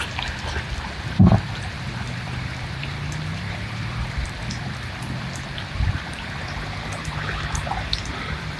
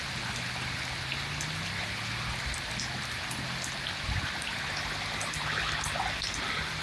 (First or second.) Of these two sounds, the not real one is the first